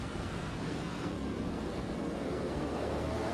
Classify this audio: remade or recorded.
remade